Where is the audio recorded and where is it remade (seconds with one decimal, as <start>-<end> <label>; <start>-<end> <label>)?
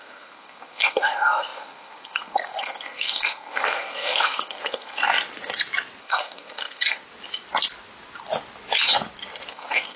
0.0-5.0 remade; 5.0-6.0 recorded; 6.0-7.0 remade; 7.0-9.5 recorded; 9.5-10.0 remade